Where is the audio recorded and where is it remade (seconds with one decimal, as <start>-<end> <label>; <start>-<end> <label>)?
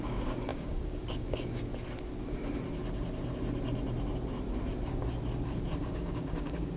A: 0.0-1.7 remade; 1.7-5.8 recorded; 5.8-6.8 remade